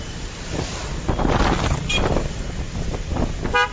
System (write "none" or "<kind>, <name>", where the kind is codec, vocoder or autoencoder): none